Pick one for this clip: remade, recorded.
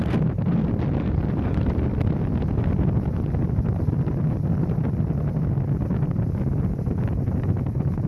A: remade